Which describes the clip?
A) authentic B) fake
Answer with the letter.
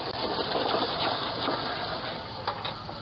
A